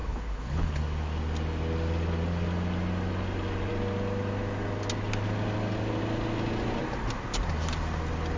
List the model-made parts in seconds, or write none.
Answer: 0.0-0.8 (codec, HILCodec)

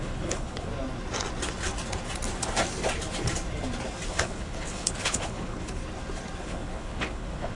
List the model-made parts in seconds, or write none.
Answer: 0.0-0.7 (codec, HILCodec); 4.1-5.8; 6.4-7.5